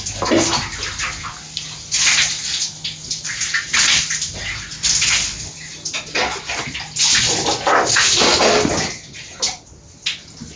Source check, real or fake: real